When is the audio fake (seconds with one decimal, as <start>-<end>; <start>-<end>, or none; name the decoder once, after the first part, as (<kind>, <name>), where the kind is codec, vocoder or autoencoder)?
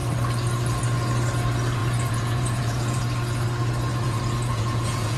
1.8-3.0 (vocoder, Vocos); 3.9-5.2